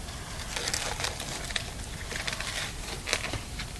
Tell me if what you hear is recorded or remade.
remade